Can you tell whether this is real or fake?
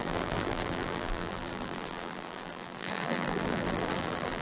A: fake